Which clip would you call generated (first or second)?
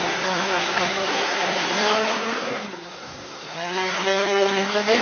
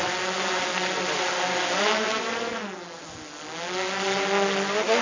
first